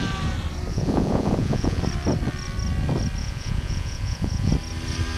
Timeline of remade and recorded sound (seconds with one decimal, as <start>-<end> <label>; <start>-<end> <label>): 0.0-0.7 recorded; 0.7-1.8 remade; 1.8-3.2 recorded; 3.2-4.5 remade; 4.5-5.2 recorded